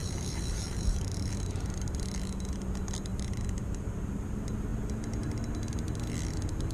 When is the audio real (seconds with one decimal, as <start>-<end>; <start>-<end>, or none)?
1.6-3.1; 4.2-6.7